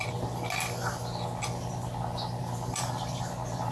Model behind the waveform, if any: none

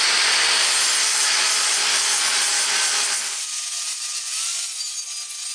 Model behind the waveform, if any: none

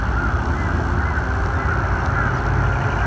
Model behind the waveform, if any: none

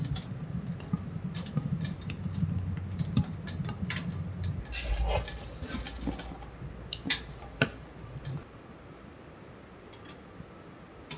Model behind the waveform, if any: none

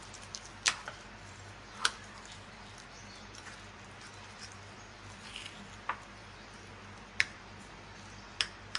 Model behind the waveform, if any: none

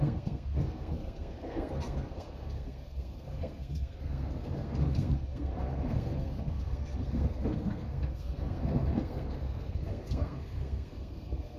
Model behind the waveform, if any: codec, SNAC